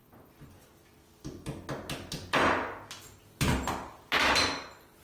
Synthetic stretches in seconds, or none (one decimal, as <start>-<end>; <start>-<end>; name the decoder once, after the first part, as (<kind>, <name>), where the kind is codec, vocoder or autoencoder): none